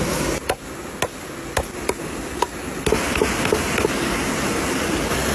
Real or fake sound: real